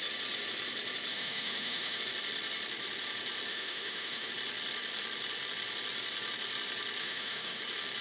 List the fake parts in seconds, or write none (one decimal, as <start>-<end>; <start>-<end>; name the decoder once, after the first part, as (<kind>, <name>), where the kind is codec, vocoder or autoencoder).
1.1-2.0 (autoencoder, DAC-VAE); 3.5-4.3; 7.0-7.6